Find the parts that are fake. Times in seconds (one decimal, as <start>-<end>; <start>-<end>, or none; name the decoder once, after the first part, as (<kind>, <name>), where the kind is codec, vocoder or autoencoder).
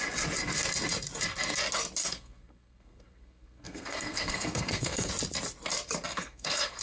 2.0-5.1 (codec, SNAC); 6.1-6.8